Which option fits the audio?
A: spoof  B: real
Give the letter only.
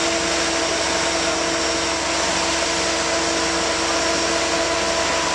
B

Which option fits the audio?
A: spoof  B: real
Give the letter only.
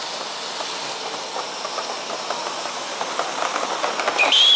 B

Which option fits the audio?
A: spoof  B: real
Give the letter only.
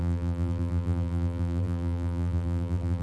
A